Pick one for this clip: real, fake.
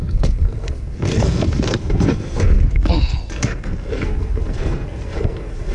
fake